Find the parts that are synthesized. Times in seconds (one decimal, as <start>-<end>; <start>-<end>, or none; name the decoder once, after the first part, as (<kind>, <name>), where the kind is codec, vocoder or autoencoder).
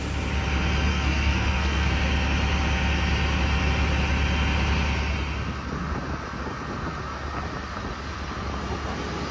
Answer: 0.9-1.9 (codec, SNAC)